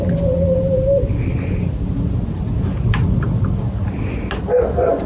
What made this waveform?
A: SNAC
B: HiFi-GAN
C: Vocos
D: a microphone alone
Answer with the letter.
D